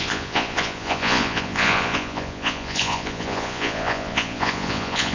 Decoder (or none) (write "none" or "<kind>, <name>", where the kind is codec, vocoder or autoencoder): vocoder, Vocos